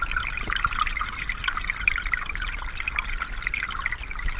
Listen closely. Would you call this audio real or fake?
real